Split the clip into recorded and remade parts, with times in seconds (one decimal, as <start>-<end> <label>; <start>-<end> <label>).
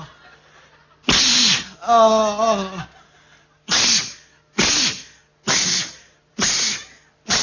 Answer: 0.0-7.4 recorded